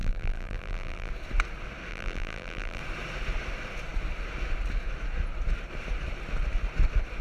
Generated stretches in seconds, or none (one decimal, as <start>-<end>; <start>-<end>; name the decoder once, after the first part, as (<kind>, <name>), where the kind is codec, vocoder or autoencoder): 0.0-1.1 (vocoder, BigVGAN v2); 1.9-2.8